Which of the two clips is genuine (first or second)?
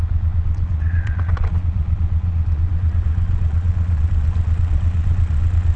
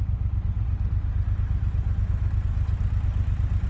second